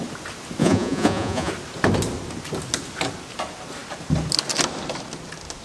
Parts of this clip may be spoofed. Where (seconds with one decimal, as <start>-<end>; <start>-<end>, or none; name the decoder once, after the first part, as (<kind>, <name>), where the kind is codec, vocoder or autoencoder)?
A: 0.6-1.5 (vocoder, Vocos)